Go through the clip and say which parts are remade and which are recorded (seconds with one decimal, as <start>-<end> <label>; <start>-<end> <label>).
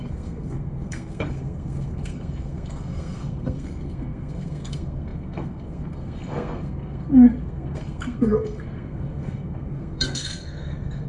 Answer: 0.0-11.1 remade